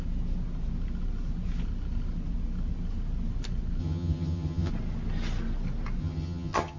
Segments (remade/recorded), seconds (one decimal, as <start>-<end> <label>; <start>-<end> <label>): 0.0-3.8 recorded; 3.8-4.7 remade; 4.7-6.0 recorded; 6.0-6.8 remade